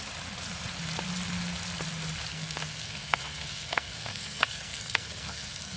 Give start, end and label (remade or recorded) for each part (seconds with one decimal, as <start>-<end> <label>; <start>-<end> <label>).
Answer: 0.0-2.3 recorded; 2.3-5.8 remade